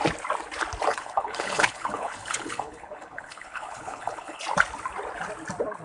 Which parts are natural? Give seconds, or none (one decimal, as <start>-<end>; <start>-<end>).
0.0-0.9; 4.4-5.8